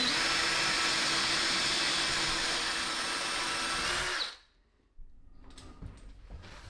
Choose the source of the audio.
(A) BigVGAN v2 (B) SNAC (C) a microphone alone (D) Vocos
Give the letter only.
C